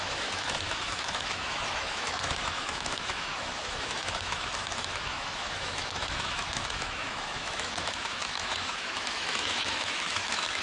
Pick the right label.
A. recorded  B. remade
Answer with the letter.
B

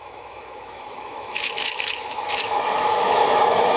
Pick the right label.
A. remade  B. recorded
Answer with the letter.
A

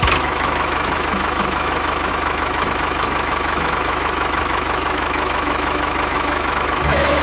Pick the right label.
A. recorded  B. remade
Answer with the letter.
B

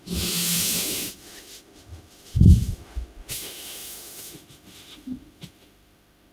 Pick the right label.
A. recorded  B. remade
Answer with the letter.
B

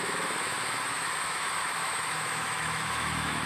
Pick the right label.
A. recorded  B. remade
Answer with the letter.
B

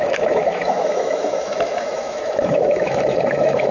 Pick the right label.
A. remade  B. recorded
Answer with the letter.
A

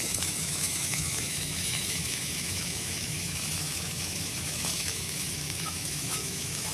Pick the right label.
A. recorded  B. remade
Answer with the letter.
B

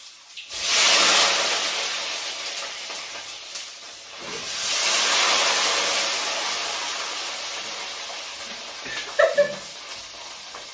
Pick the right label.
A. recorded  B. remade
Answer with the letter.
A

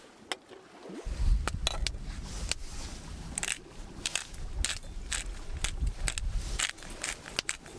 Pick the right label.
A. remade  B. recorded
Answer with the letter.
B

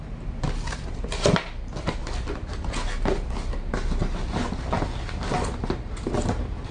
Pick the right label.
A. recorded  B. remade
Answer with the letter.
A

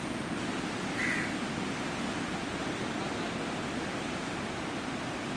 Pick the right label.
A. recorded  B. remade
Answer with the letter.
A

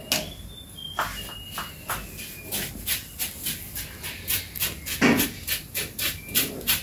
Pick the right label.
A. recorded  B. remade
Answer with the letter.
A